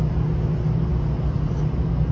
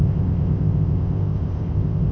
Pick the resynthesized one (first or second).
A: second